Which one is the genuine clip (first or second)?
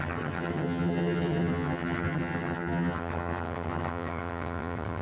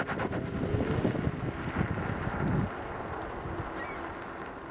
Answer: second